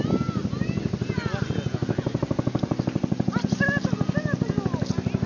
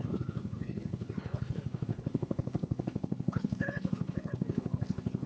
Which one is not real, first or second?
second